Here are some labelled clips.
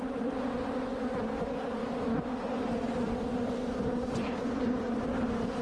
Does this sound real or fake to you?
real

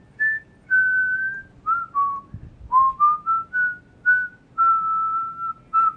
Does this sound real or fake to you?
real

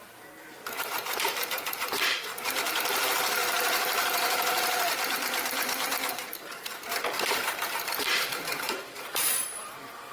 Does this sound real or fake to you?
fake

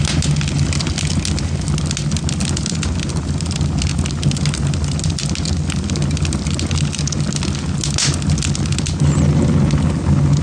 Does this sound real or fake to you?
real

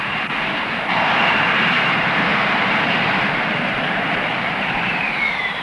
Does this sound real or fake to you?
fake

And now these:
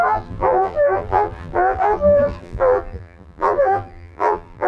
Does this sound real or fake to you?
fake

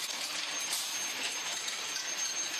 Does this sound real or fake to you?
fake